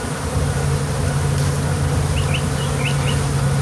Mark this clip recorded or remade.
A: recorded